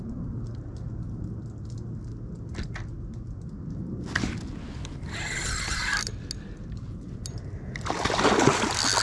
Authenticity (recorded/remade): recorded